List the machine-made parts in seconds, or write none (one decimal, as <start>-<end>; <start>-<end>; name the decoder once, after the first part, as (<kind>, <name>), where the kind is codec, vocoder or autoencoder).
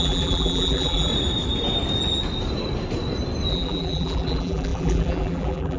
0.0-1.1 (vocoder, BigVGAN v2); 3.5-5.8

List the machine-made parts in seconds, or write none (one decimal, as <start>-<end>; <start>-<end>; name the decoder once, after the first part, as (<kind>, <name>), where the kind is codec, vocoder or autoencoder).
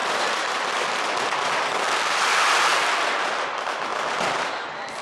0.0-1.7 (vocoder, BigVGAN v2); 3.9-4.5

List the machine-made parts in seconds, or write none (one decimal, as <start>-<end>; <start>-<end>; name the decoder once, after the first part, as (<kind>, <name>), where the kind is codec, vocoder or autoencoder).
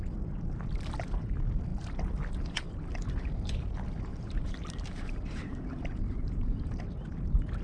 4.1-6.8 (vocoder, BigVGAN v2)